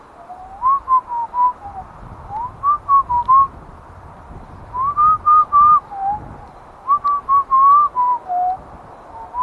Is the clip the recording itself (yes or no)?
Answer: yes